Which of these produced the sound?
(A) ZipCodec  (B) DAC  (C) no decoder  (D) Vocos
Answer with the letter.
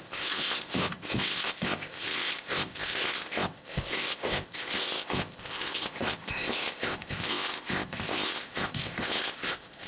A